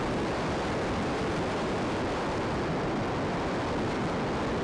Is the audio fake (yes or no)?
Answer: no